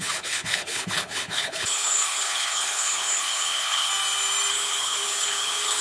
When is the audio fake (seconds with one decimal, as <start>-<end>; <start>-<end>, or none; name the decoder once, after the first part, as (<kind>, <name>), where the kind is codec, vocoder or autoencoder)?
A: 0.0-3.9 (codec, HILCodec); 4.5-5.8